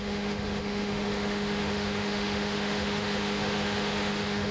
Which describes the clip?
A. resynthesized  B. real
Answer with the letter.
A